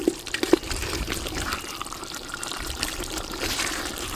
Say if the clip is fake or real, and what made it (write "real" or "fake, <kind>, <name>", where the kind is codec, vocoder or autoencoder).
fake, vocoder, BigVGAN v2